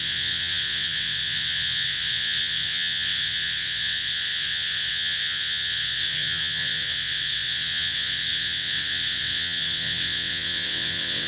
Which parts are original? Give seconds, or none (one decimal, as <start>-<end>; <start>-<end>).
none